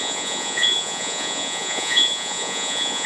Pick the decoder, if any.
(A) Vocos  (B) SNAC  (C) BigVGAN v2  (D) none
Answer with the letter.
A